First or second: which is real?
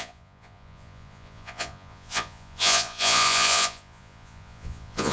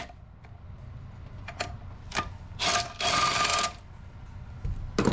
second